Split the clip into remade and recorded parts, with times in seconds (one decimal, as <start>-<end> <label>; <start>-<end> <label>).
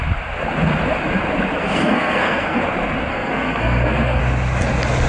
0.0-1.6 recorded; 1.6-2.6 remade; 2.6-3.1 recorded; 3.1-4.2 remade; 4.2-5.1 recorded